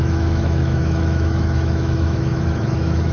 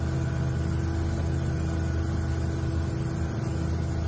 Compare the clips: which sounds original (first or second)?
second